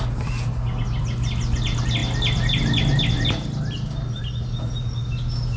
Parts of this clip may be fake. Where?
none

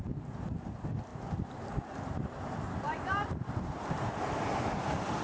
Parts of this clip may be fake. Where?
1.1-4.2 (vocoder, BigVGAN v2)

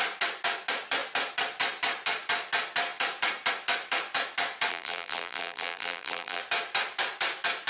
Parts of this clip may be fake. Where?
4.7-6.4 (vocoder, BigVGAN v2)